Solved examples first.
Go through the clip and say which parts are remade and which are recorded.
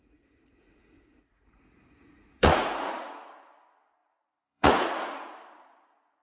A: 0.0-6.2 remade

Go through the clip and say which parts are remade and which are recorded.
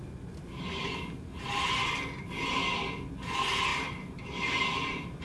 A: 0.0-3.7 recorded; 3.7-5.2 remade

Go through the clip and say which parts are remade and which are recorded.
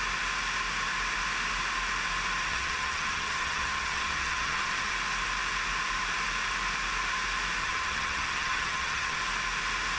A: 0.0-2.5 recorded; 2.5-4.9 remade; 4.9-7.6 recorded; 7.6-9.2 remade; 9.2-10.0 recorded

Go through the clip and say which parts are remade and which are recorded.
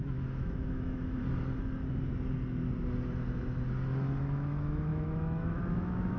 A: 0.0-1.2 remade; 1.2-4.2 recorded; 4.2-6.2 remade